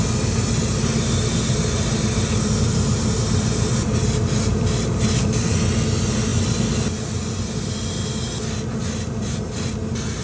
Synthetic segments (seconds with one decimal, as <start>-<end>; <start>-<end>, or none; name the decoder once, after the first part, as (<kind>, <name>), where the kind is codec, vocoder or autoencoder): none